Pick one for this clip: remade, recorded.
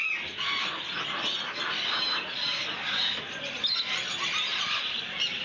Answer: recorded